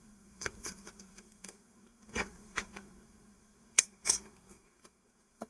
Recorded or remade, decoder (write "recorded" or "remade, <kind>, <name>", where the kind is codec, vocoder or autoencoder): remade, codec, SNAC